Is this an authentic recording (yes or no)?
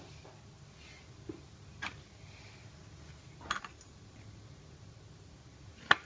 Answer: yes